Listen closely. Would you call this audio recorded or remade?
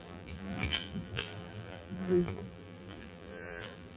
remade